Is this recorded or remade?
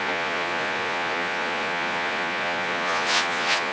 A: remade